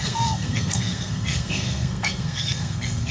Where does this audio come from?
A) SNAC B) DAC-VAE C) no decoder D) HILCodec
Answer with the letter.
A